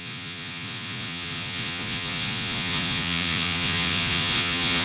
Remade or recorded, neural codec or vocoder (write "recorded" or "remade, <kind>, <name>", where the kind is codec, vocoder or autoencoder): remade, vocoder, Vocos